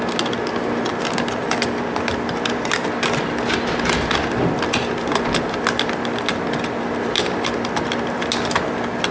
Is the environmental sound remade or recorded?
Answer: recorded